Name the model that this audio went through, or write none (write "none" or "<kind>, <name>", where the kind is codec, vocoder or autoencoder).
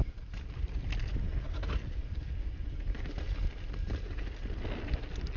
none